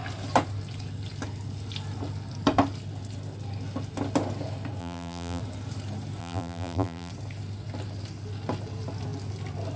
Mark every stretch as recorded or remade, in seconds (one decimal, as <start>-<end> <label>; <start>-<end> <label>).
0.0-4.8 recorded; 4.8-5.4 remade; 5.4-6.2 recorded; 6.2-7.1 remade; 7.1-9.8 recorded